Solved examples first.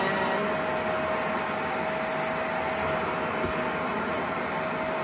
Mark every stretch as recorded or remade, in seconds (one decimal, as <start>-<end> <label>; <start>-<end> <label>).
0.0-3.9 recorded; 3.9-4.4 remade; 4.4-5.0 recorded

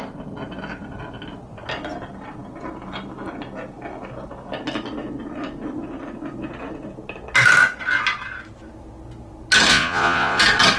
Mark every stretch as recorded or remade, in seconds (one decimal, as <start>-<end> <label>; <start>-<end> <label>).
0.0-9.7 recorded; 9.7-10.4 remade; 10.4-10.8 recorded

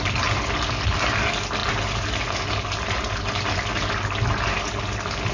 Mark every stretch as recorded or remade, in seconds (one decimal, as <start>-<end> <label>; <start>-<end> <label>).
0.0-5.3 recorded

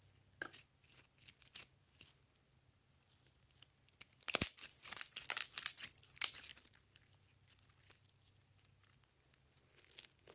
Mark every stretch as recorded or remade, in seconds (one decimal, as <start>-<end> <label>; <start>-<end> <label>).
0.0-10.3 recorded

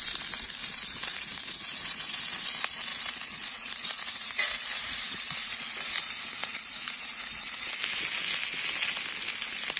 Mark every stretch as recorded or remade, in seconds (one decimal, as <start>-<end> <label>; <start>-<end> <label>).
0.0-1.1 recorded; 1.1-2.2 remade; 2.2-2.9 recorded; 2.9-5.9 remade; 5.9-6.4 recorded; 6.4-7.7 remade; 7.7-9.8 recorded

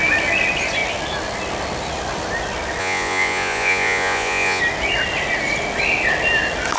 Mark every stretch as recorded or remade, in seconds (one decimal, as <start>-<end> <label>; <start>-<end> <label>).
0.0-2.8 recorded; 2.8-4.6 remade; 4.6-6.8 recorded

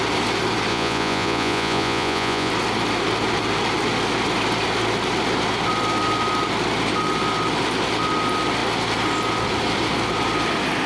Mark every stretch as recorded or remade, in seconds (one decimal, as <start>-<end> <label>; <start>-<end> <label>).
0.0-0.7 recorded; 0.7-2.5 remade; 2.5-10.9 recorded